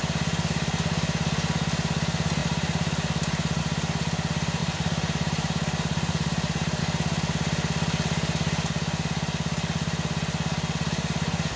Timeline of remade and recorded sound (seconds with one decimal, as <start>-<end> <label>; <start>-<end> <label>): 0.0-2.4 recorded; 2.4-3.6 remade; 3.6-4.6 recorded; 4.6-6.8 remade; 6.8-11.6 recorded